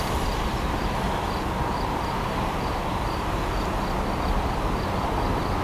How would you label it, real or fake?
real